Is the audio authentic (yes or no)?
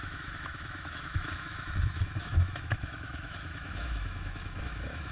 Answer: no